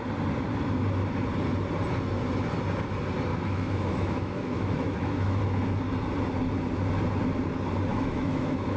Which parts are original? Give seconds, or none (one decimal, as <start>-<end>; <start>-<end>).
0.0-3.3; 5.4-7.9

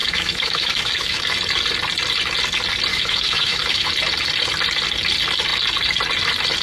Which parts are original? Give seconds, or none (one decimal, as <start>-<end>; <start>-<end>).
1.2-2.9; 3.9-6.6

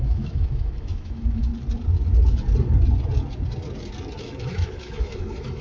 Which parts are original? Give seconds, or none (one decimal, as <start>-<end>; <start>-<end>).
1.5-4.2

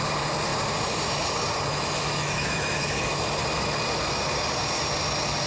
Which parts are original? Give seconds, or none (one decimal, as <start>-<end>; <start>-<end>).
0.0-1.7; 3.2-5.5

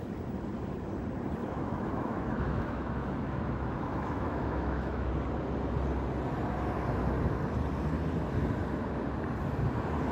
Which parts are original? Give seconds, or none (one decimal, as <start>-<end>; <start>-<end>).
0.0-1.4; 5.1-10.1

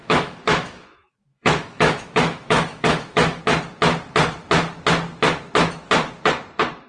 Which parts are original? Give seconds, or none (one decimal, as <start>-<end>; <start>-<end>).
3.4-6.9